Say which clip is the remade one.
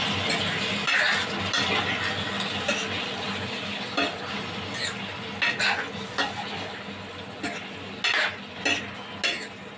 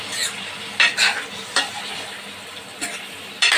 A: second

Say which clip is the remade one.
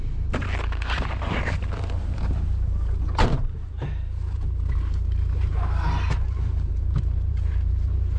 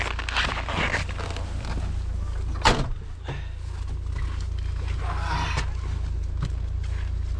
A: first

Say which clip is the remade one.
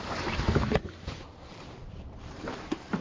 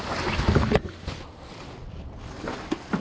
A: first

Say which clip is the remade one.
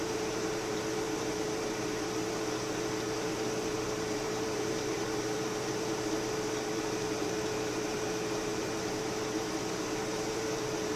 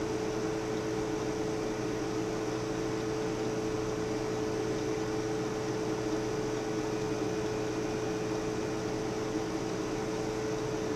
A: first